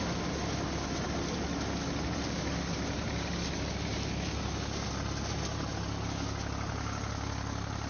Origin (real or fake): real